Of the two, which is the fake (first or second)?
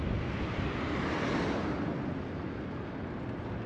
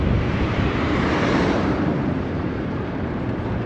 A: second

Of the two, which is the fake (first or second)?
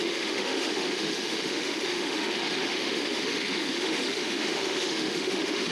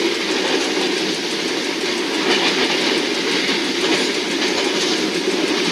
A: first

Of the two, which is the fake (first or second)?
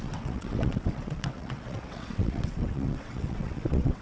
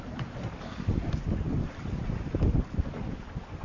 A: first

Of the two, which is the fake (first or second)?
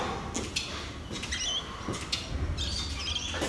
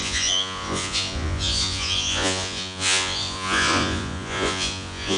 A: second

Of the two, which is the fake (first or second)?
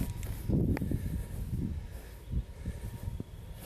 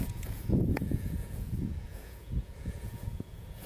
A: second